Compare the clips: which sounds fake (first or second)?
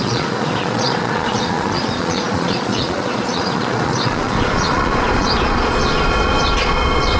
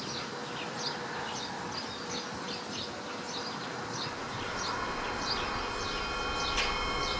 first